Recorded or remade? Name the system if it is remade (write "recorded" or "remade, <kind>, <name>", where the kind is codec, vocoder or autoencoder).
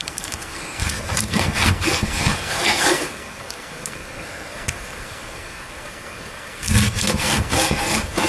remade, codec, SNAC